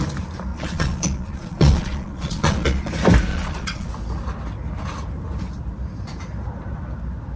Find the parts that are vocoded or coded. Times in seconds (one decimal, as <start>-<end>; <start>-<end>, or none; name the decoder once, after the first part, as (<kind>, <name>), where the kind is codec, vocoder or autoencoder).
0.5-2.9 (vocoder, Vocos); 3.3-3.9